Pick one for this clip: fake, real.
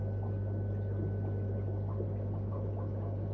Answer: real